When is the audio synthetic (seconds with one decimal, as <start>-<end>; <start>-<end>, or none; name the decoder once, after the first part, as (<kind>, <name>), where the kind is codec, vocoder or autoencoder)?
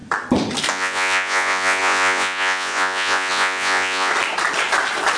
0.7-4.1 (vocoder, Vocos)